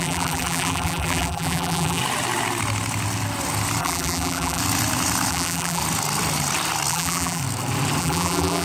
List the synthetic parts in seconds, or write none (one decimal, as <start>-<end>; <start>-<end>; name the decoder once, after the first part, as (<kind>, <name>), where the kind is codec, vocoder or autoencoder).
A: 0.0-2.0 (vocoder, BigVGAN v2); 3.8-4.6; 5.3-5.8; 6.9-7.4; 8.0-8.6